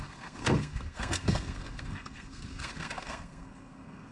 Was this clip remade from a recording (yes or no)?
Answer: yes